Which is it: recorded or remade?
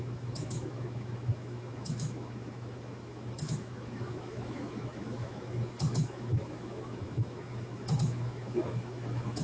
remade